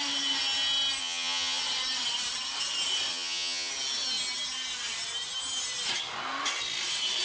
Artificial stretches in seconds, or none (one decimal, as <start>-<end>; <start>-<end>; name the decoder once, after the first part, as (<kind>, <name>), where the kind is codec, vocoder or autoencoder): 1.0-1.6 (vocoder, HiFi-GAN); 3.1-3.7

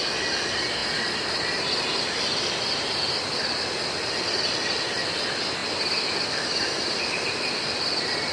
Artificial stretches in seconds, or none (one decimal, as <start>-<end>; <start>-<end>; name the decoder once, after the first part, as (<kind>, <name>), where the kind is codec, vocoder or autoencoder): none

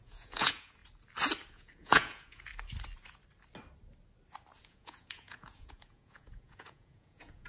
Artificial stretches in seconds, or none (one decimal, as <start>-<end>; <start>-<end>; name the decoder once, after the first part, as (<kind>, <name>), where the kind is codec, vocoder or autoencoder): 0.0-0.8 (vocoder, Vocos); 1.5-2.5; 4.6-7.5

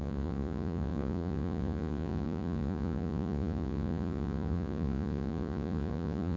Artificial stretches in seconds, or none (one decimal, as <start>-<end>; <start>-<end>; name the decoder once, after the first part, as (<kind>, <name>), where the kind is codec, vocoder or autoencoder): 0.0-6.4 (vocoder, Vocos)